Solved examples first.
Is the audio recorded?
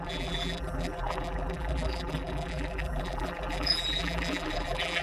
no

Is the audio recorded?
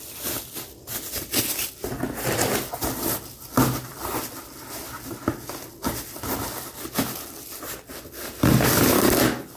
yes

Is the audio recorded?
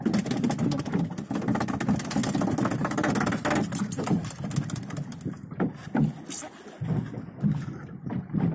yes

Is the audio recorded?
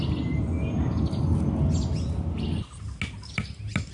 yes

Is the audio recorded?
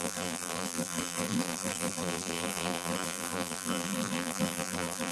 no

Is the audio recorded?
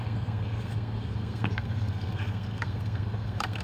no